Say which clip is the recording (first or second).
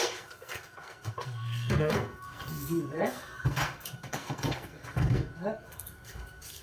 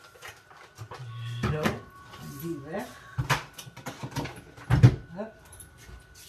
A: second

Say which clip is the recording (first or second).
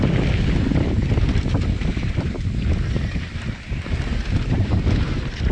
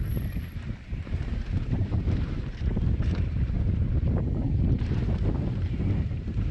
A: first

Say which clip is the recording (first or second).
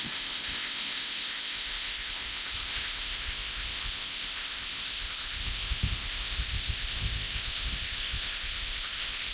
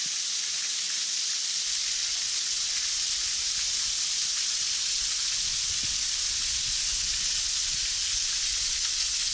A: second